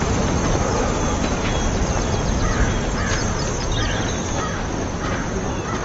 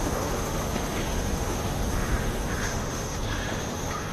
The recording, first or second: first